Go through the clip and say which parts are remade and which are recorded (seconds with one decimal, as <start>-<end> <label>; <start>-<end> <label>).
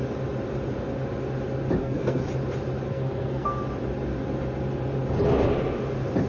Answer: 0.0-1.8 recorded; 1.8-2.3 remade; 2.3-2.9 recorded; 2.9-3.6 remade; 3.6-6.3 recorded